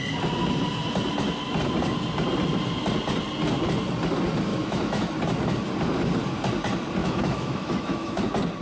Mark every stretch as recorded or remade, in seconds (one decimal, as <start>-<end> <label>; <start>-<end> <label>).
0.0-4.5 recorded; 4.5-5.1 remade; 5.1-7.0 recorded; 7.0-8.2 remade; 8.2-8.6 recorded